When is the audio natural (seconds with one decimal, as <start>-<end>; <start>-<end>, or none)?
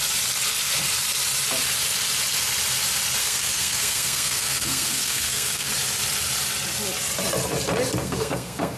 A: 0.0-3.2; 5.7-8.0